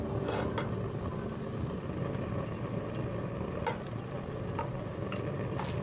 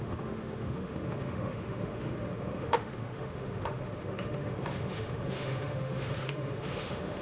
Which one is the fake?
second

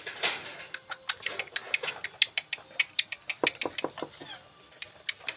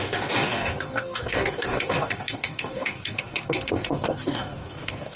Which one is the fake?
second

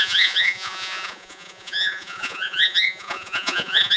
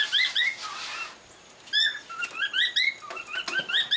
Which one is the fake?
first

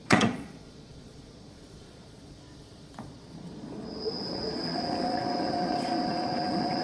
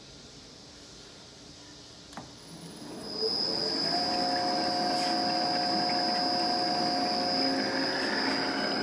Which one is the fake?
first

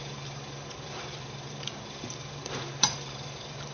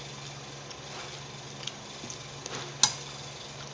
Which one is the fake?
first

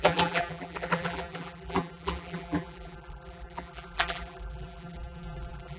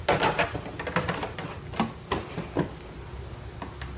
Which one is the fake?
first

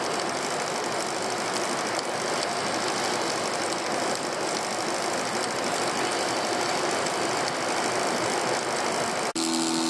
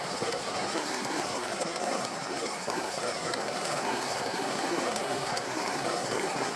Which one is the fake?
second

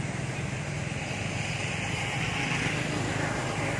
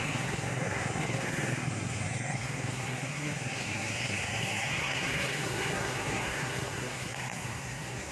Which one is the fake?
second